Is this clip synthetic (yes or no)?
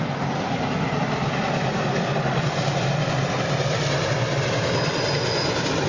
no